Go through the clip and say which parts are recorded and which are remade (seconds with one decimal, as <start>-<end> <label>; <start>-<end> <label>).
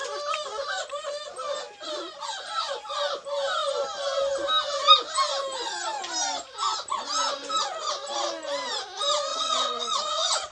0.0-9.3 recorded; 9.3-10.5 remade